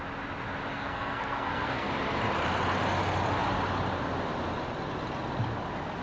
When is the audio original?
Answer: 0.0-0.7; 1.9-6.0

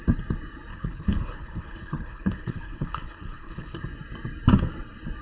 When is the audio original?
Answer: 0.0-0.7; 3.8-5.2

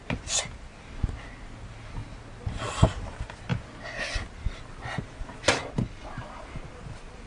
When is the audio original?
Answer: 0.0-7.3